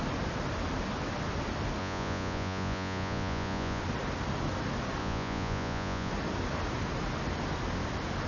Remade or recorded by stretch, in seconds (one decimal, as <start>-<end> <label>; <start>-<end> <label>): 0.0-1.8 recorded; 1.8-3.8 remade; 3.8-5.0 recorded; 5.0-6.1 remade; 6.1-8.3 recorded